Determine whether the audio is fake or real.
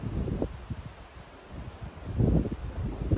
real